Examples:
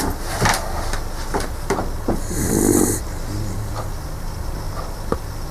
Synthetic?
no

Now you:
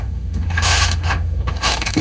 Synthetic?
yes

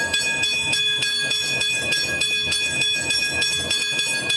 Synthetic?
yes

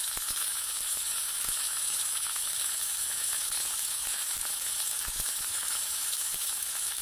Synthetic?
yes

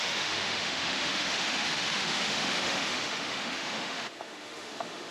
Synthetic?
yes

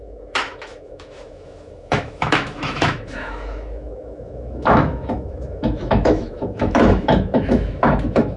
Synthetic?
yes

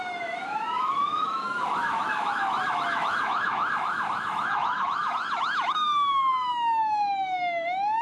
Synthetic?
yes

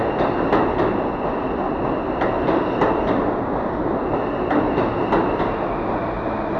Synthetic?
no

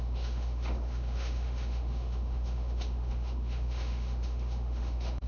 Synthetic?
yes